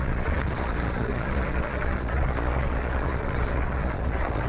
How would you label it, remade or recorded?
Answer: remade